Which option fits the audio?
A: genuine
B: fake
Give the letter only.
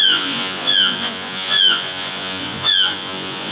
B